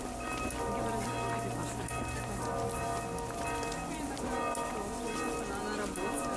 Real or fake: real